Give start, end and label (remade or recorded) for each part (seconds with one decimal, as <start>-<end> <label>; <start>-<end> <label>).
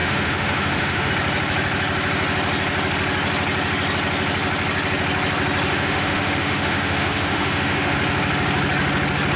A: 0.0-1.1 remade; 1.1-5.7 recorded; 5.7-8.0 remade; 8.0-9.4 recorded